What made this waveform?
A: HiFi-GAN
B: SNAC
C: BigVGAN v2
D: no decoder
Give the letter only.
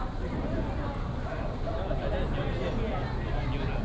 D